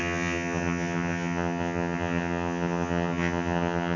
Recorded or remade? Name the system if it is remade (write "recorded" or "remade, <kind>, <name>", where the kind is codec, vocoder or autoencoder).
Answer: remade, vocoder, HiFi-GAN